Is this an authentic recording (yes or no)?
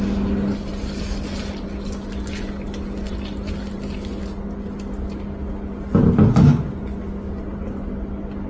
yes